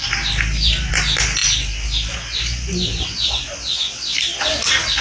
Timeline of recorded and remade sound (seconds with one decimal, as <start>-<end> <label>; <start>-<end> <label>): 0.0-5.0 recorded